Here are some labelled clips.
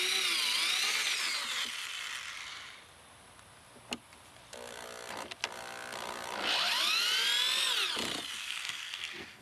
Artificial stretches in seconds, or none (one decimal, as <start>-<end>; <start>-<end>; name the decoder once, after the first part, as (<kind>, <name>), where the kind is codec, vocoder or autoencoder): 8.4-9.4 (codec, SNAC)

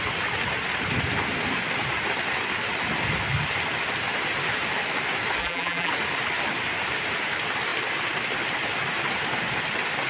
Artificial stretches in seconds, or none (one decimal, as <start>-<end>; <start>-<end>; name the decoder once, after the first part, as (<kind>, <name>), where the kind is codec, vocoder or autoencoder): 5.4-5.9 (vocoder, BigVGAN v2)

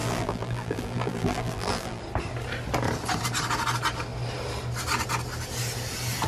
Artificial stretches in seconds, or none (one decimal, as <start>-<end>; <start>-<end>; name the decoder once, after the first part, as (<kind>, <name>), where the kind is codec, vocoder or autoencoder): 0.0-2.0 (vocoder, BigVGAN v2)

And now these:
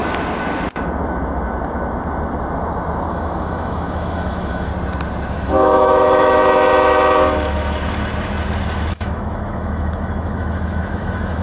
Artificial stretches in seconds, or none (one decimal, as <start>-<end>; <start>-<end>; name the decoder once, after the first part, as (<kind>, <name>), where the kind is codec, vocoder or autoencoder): 3.1-4.7 (autoencoder, DAC-VAE); 5.3-6.4; 8.9-11.4

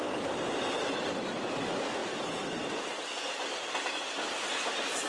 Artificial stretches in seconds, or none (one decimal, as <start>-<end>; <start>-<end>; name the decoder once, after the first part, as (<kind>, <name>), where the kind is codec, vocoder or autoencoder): none

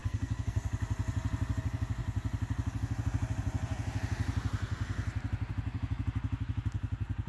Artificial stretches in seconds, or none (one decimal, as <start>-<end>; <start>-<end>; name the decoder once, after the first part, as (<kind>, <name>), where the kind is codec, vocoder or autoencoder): 0.0-0.7 (codec, SNAC)

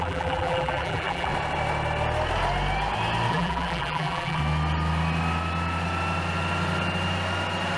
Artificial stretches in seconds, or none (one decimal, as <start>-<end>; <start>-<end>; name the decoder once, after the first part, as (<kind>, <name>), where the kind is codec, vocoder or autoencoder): 0.0-1.3 (vocoder, BigVGAN v2); 3.3-4.4